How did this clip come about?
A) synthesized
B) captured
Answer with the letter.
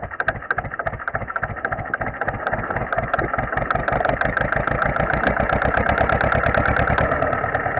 B